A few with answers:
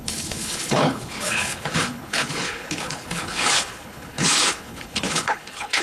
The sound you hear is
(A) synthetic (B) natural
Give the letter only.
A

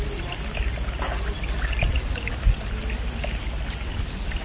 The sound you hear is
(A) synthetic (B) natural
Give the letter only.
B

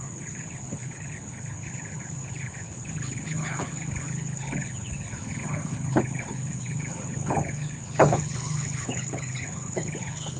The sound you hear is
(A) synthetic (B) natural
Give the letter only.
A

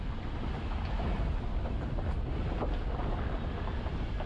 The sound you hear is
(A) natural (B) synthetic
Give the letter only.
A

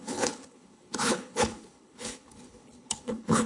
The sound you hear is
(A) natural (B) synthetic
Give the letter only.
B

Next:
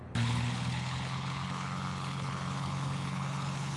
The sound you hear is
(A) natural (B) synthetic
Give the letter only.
B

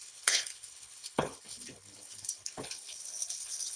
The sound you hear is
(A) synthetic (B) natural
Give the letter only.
A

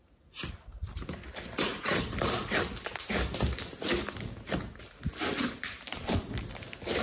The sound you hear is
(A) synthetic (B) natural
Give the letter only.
B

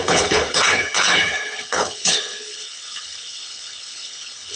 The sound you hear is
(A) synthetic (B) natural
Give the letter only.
A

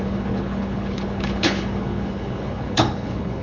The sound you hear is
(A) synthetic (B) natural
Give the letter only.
A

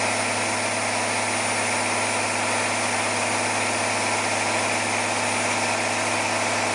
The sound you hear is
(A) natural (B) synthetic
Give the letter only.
A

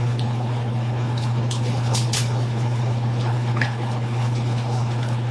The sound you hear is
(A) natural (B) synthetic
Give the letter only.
B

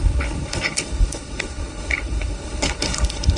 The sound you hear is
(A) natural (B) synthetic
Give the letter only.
B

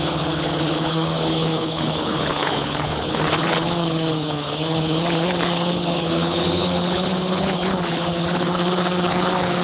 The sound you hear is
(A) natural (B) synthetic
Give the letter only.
B